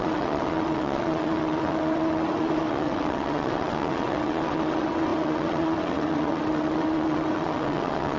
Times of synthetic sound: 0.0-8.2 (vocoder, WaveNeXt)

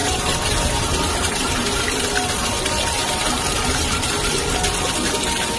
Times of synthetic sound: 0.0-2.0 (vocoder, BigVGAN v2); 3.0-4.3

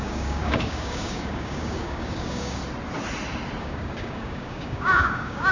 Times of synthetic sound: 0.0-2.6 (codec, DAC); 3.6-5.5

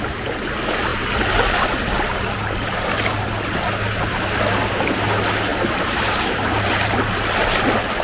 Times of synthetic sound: 5.5-6.9 (vocoder, BigVGAN v2)

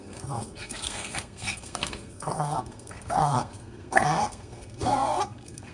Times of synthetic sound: 0.0-5.7 (codec, SNAC)

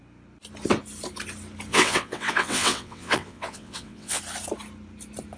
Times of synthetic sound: 1.7-4.2 (vocoder, WaveNeXt)

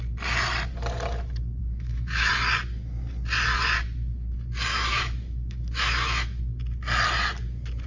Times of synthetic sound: 1.6-2.3 (autoencoder, DAC-VAE); 4.7-6.4

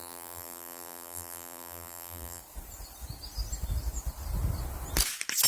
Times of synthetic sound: 0.0-2.4 (vocoder, BigVGAN v2)